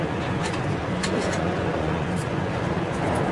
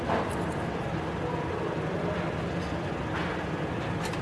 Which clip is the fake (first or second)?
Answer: first